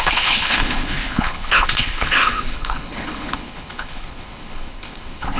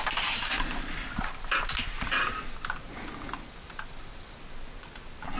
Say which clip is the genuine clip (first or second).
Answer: second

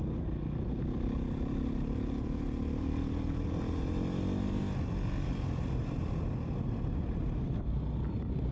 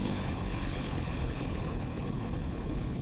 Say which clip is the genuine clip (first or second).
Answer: first